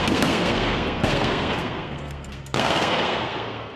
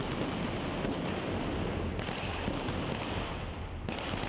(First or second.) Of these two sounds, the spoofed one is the first